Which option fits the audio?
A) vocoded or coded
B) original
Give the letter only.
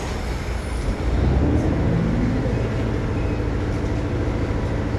B